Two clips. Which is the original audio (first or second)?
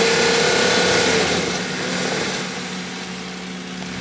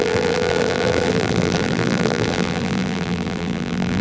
first